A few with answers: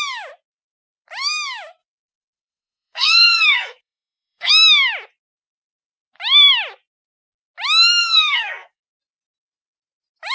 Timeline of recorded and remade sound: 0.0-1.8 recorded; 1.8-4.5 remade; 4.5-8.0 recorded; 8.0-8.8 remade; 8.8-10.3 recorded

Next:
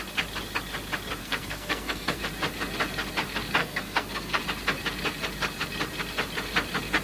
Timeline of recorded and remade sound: 0.0-1.2 recorded; 1.2-2.2 remade; 2.2-3.6 recorded; 3.6-4.4 remade; 4.4-7.0 recorded